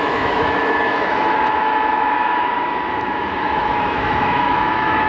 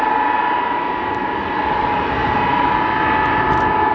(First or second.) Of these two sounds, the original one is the second